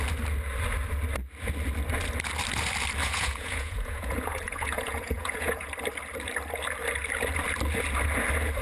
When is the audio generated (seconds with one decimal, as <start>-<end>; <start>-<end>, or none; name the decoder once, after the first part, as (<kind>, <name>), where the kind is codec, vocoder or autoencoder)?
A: 3.0-5.7 (vocoder, Vocos)